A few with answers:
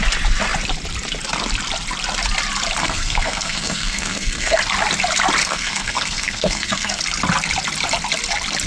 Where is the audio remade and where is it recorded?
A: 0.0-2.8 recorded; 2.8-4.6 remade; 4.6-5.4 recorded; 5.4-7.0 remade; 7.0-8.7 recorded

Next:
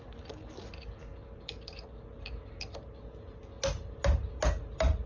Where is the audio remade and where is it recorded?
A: 0.0-5.1 recorded

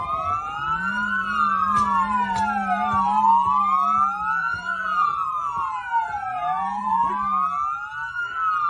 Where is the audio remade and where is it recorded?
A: 0.0-4.4 recorded; 4.4-7.1 remade; 7.1-8.7 recorded

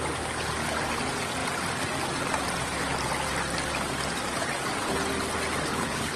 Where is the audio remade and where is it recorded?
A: 0.0-5.7 recorded; 5.7-6.2 remade